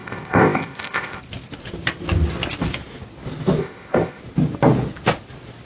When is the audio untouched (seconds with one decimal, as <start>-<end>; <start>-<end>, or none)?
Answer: 1.2-3.6; 4.2-5.6